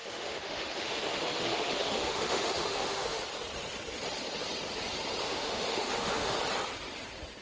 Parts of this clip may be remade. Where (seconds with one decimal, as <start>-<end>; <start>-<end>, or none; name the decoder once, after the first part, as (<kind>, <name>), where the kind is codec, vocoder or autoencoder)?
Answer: 0.0-3.2 (autoencoder, DAC-VAE); 5.2-6.4